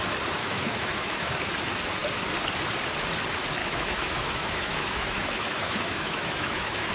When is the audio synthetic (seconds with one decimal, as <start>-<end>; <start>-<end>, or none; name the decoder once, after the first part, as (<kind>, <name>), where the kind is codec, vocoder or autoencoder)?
0.4-1.5 (autoencoder, DAC-VAE); 3.6-6.9